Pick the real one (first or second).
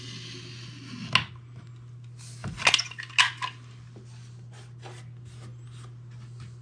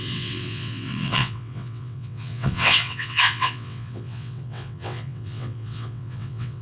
first